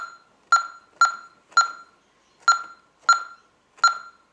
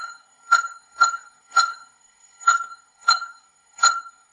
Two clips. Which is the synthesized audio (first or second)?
second